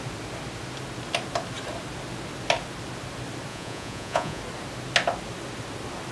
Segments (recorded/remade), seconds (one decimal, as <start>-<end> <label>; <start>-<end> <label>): 0.0-3.5 recorded; 3.5-4.4 remade; 4.4-6.1 recorded